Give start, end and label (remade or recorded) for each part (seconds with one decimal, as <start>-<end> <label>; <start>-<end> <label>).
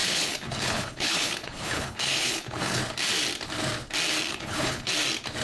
0.0-2.8 remade; 2.8-4.3 recorded; 4.3-4.9 remade; 4.9-5.4 recorded